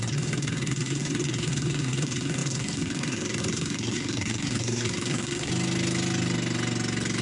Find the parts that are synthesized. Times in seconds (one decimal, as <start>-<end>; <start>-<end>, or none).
0.0-5.5